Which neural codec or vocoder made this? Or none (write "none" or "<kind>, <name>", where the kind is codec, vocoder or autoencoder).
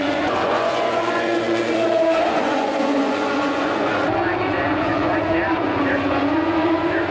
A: vocoder, Vocos